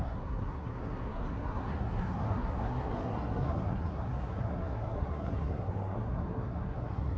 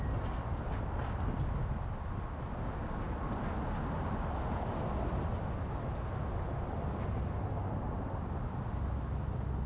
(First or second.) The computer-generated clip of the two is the first